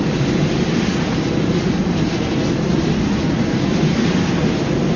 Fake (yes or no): no